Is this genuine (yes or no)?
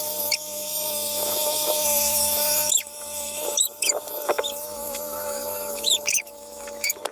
no